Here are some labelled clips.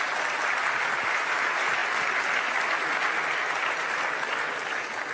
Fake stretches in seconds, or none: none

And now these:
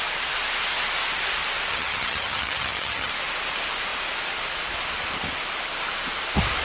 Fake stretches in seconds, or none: 1.7-3.1 (vocoder, HiFi-GAN)

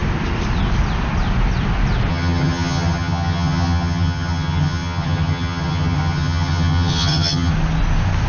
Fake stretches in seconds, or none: 2.1-7.5 (vocoder, HiFi-GAN)

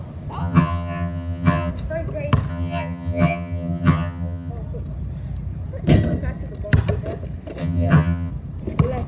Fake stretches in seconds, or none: 0.4-1.7 (vocoder, HiFi-GAN); 2.5-4.5; 7.6-8.3

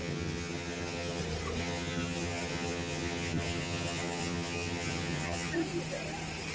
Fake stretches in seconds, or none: 0.0-1.2 (vocoder, HiFi-GAN); 1.6-5.5

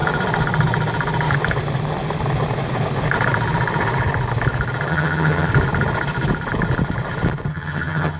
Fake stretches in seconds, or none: 4.9-5.5 (vocoder, HiFi-GAN); 7.5-8.2